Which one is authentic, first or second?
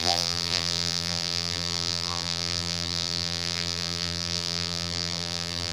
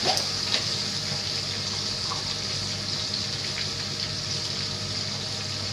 second